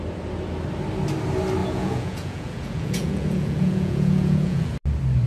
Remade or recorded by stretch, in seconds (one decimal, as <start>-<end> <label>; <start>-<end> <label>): 0.0-1.6 recorded; 1.6-4.7 remade; 4.7-5.3 recorded